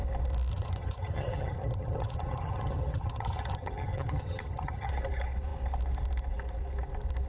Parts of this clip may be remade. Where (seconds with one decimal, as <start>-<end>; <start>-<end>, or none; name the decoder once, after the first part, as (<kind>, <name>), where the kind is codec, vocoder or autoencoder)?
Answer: 0.5-4.9 (vocoder, HiFi-GAN)